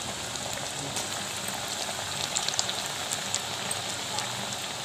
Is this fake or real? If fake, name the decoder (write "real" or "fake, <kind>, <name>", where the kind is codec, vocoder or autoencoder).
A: real